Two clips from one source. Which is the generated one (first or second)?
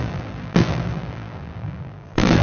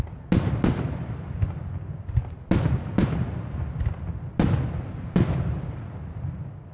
first